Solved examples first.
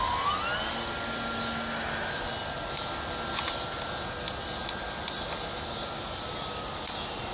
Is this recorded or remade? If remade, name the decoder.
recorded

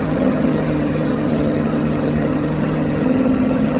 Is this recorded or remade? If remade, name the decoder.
remade, vocoder, HiFi-GAN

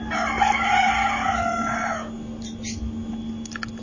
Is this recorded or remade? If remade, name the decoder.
recorded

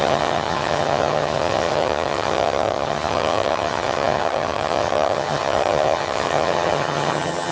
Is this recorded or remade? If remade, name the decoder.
remade, vocoder, HiFi-GAN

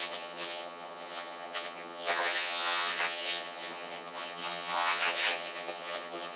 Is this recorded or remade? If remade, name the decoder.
remade, vocoder, HiFi-GAN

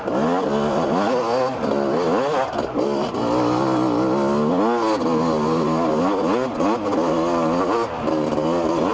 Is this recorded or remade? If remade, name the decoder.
recorded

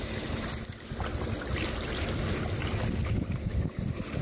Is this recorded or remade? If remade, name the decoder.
recorded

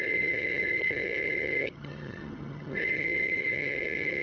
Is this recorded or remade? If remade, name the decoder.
remade, vocoder, HiFi-GAN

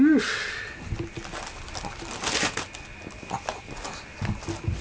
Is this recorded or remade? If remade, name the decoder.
recorded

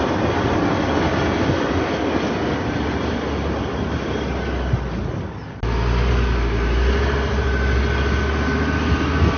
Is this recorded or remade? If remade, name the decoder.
recorded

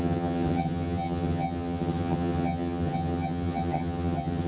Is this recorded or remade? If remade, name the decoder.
remade, vocoder, HiFi-GAN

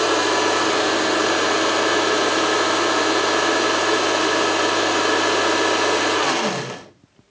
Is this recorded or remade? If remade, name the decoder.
recorded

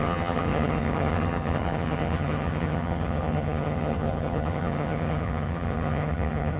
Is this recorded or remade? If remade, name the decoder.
remade, vocoder, HiFi-GAN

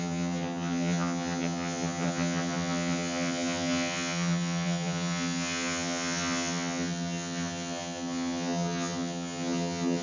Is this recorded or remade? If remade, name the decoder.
remade, vocoder, HiFi-GAN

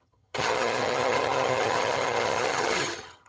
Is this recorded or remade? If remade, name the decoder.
remade, vocoder, HiFi-GAN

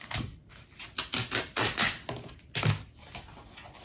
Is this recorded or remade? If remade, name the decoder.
recorded